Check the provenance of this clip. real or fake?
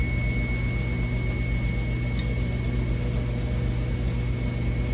real